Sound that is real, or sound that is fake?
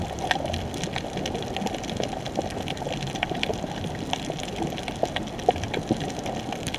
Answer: real